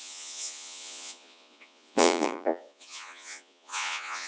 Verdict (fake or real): fake